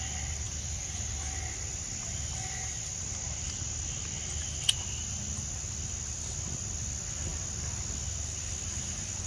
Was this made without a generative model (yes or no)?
yes